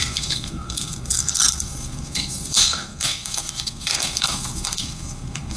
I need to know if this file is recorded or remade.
remade